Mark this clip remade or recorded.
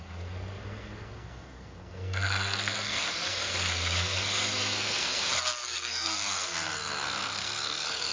remade